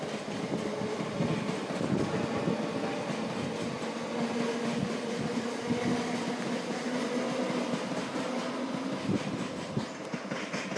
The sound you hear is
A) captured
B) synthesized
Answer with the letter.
A